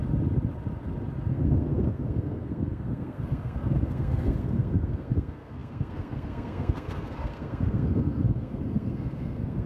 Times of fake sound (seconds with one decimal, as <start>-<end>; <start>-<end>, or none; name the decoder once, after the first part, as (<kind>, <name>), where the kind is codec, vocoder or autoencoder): 1.3-9.7 (codec, SNAC)